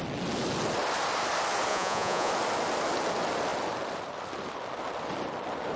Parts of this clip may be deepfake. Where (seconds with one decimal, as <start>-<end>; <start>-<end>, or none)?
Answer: 1.7-2.3